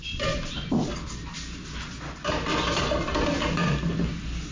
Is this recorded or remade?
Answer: recorded